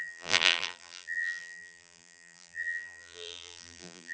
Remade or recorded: remade